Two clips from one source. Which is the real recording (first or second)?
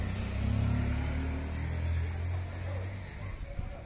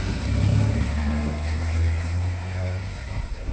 first